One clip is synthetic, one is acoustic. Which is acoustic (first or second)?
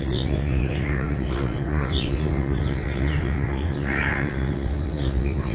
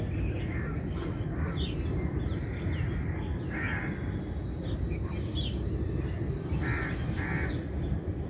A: second